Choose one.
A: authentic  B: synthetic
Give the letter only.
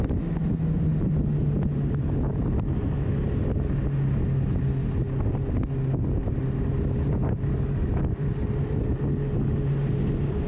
A